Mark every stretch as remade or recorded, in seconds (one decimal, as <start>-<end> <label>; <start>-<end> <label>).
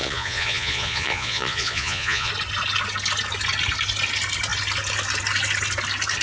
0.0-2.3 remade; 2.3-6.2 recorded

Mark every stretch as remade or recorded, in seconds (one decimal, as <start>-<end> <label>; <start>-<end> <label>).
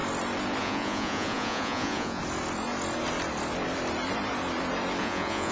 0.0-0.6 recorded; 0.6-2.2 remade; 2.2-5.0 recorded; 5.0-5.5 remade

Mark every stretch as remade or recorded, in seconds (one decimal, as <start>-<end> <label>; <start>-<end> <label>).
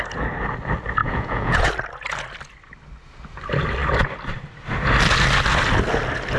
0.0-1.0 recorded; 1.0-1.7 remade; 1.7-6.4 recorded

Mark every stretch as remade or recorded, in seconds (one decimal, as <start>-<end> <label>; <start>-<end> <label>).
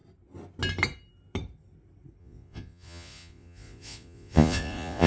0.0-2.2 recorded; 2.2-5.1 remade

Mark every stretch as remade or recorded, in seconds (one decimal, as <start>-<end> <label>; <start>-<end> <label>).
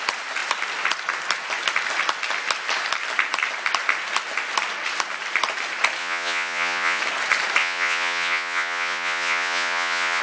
0.0-6.0 recorded; 6.0-7.0 remade; 7.0-7.6 recorded; 7.6-10.2 remade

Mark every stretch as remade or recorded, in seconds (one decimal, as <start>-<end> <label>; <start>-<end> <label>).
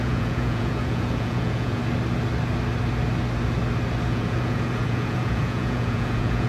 0.0-1.8 remade; 1.8-4.1 recorded; 4.1-6.5 remade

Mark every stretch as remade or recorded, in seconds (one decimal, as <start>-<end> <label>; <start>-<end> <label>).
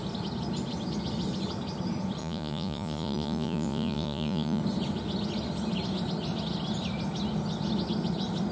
0.0-2.2 recorded; 2.2-4.6 remade; 4.6-8.5 recorded